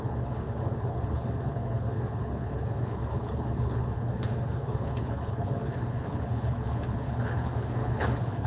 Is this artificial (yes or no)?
yes